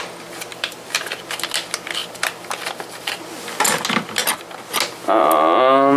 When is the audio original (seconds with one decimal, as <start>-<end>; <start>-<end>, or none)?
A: 0.0-0.5; 1.2-2.0; 3.2-6.0